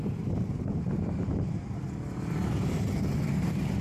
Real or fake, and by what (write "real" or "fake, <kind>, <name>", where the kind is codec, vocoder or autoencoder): real